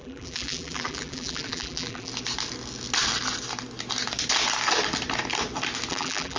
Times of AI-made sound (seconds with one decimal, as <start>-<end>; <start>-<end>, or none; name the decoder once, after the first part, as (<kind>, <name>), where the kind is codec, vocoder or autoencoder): 0.0-2.1 (vocoder, BigVGAN v2); 5.9-6.4